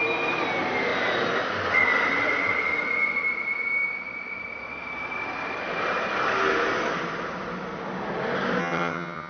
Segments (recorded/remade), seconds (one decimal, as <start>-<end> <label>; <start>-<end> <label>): 0.0-8.6 recorded; 8.6-9.3 remade